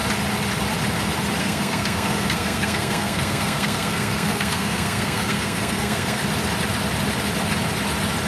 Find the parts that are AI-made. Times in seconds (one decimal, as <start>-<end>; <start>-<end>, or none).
1.4-6.2